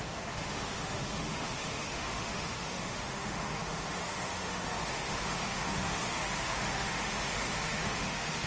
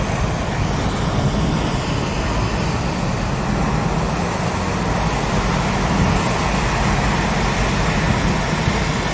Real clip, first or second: second